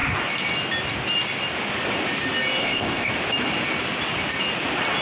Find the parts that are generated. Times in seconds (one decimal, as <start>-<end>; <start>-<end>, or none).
2.6-3.1